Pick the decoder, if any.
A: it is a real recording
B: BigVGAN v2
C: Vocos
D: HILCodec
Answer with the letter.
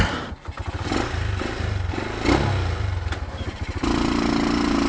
A